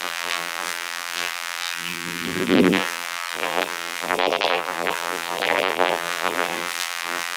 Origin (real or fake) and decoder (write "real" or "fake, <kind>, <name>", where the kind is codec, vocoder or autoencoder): fake, vocoder, BigVGAN v2